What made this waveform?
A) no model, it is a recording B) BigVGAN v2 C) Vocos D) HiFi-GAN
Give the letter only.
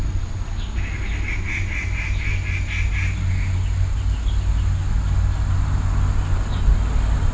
A